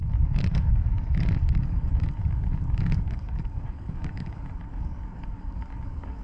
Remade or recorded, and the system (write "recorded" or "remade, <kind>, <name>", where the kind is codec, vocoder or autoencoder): remade, codec, DAC